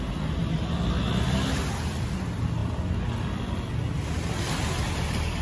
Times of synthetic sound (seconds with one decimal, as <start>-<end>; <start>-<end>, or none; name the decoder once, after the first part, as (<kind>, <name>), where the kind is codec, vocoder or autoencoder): none